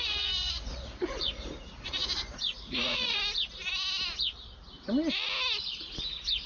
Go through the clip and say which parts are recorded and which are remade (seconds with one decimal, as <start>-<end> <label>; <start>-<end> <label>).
0.0-0.4 recorded; 0.4-3.2 remade; 3.2-6.5 recorded

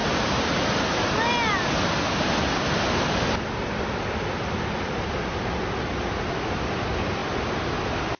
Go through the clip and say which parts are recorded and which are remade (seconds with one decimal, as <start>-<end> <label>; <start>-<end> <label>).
0.0-8.2 recorded

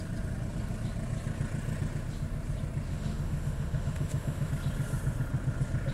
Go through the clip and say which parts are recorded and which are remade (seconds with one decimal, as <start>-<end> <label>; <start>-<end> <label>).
0.0-2.9 recorded; 2.9-4.5 remade; 4.5-5.9 recorded

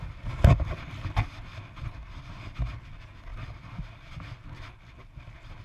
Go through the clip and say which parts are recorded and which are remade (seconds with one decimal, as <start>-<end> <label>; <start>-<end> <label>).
0.0-0.5 recorded; 0.5-1.1 remade; 1.1-3.3 recorded; 3.3-4.1 remade; 4.1-5.6 recorded